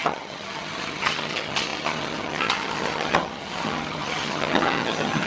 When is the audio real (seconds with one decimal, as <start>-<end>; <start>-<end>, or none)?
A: none